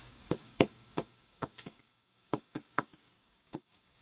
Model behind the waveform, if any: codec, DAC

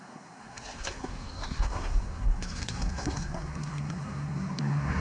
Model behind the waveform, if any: codec, SNAC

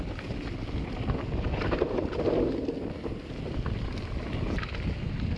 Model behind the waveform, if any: none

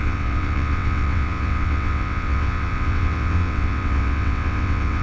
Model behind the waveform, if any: vocoder, WaveNeXt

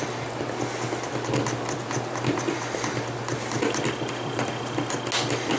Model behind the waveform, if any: none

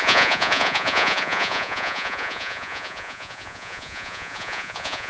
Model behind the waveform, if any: vocoder, Vocos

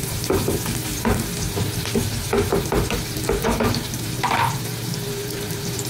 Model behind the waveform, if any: vocoder, BigVGAN v2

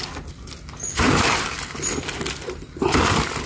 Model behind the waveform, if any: none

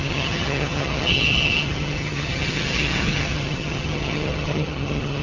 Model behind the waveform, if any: vocoder, HiFi-GAN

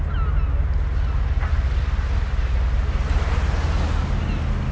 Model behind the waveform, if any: none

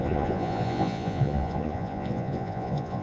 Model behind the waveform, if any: vocoder, Vocos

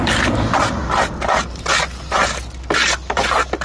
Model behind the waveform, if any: none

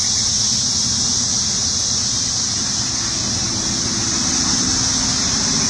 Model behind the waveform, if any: none